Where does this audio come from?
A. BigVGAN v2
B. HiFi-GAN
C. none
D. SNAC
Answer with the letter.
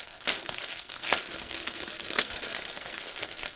D